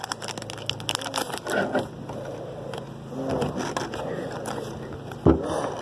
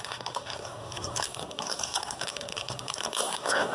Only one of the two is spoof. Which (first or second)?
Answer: second